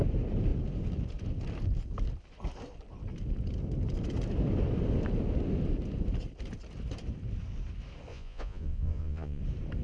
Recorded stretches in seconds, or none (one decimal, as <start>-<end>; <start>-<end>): 0.0-8.1; 9.4-9.8

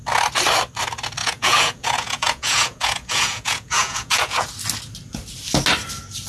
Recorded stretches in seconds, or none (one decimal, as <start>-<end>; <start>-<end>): 0.0-1.2; 4.5-6.3

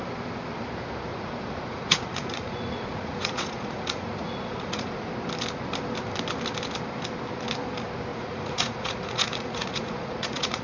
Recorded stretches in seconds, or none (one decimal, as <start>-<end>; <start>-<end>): 0.0-1.1; 5.1-8.1

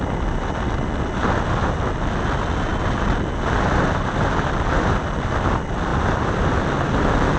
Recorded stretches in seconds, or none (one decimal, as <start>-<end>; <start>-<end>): 0.0-7.4

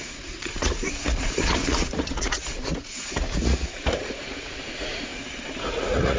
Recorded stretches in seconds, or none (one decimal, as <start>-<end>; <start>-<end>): 5.1-5.6

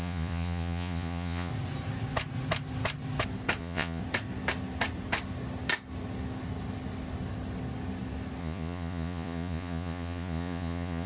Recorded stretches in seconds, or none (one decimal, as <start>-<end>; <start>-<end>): 1.5-3.6; 4.0-8.4

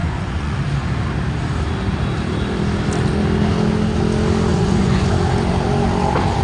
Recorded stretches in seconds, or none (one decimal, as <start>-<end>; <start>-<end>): 0.6-4.5; 5.1-6.4